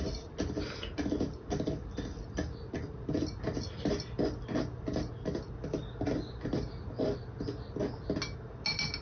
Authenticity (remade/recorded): recorded